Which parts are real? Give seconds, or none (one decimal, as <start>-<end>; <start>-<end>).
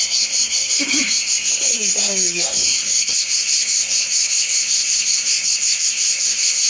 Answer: none